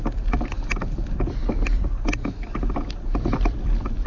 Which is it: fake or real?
fake